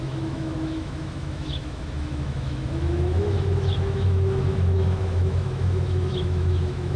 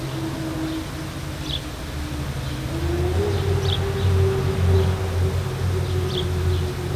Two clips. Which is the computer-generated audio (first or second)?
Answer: first